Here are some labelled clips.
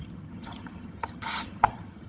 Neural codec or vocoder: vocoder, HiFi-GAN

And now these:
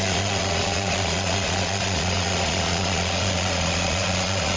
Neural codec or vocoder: vocoder, Vocos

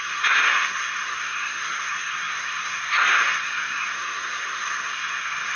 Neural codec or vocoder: codec, SNAC